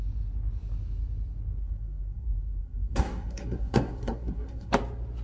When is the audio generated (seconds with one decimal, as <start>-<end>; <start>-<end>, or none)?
1.6-4.7